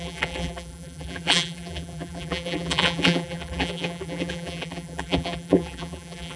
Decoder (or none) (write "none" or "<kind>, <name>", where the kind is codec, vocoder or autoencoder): vocoder, BigVGAN v2